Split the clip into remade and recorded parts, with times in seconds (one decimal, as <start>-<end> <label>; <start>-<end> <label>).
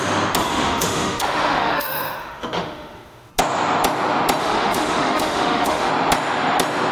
0.0-0.4 recorded; 0.4-3.3 remade; 3.3-4.4 recorded; 4.4-5.9 remade; 5.9-6.9 recorded